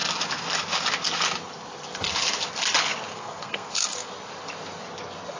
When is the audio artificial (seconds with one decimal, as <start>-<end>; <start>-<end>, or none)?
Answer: 3.1-4.1